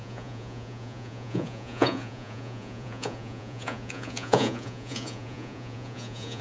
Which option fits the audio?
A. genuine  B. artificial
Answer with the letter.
B